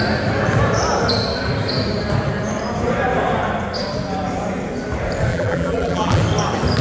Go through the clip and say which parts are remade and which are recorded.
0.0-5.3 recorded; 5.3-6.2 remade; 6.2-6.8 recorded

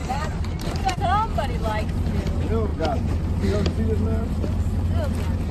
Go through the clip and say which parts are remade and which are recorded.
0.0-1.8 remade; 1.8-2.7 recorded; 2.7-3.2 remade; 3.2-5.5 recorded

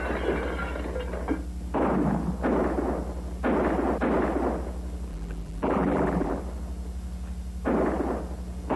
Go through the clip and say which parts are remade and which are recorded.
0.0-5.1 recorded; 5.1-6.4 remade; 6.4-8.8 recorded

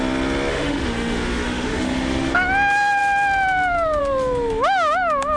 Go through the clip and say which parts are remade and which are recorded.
0.0-0.5 recorded; 0.5-2.3 remade; 2.3-5.4 recorded

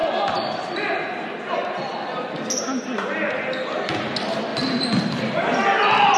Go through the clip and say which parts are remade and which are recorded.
0.0-6.2 recorded

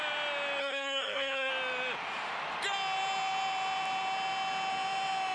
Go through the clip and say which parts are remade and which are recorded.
0.0-0.6 recorded; 0.6-1.5 remade; 1.5-5.3 recorded